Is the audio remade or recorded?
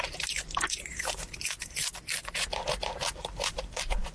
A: remade